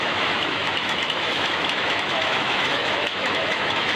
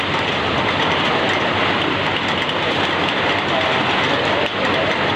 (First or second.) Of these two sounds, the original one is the second